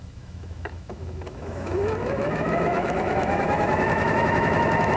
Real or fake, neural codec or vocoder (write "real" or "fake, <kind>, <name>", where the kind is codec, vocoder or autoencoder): fake, autoencoder, DAC-VAE